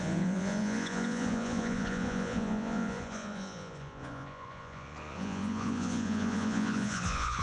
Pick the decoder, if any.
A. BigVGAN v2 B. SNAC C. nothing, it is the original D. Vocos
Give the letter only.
D